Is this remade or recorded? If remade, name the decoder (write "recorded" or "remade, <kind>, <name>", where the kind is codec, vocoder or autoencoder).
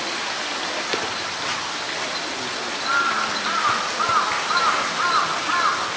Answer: recorded